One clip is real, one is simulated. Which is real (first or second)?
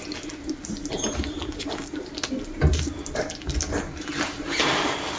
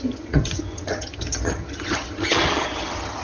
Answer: first